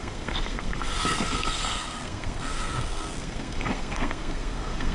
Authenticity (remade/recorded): remade